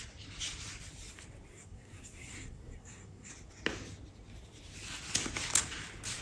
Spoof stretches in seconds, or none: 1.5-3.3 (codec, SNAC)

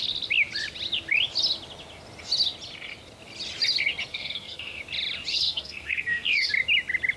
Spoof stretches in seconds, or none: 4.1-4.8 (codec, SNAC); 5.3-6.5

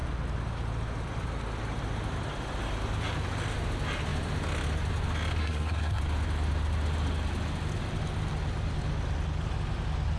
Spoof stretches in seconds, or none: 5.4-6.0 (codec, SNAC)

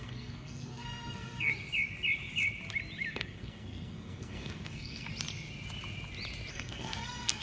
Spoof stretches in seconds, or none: 0.0-1.5 (codec, SNAC); 3.1-5.1; 6.5-7.4